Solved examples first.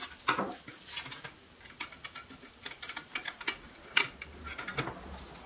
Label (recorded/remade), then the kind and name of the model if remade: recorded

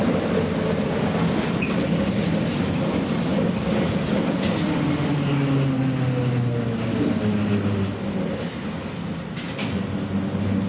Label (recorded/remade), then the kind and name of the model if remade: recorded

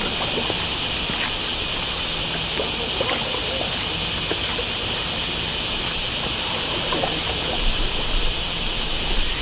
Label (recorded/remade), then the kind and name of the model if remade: recorded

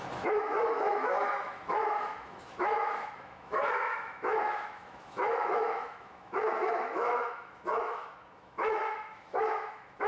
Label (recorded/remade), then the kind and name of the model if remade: remade, autoencoder, DAC-VAE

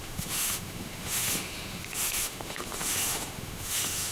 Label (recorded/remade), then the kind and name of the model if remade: remade, autoencoder, DAC-VAE